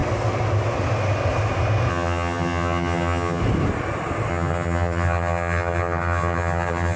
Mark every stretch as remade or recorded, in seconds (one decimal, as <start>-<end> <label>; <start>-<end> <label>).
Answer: 0.0-1.9 recorded; 1.9-3.4 remade; 3.4-4.3 recorded; 4.3-7.0 remade